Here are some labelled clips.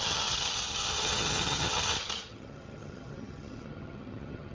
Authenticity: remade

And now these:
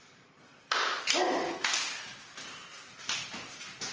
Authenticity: recorded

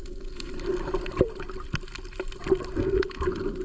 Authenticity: recorded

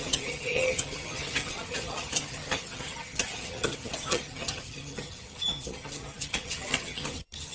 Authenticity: remade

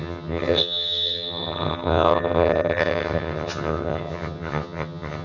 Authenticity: remade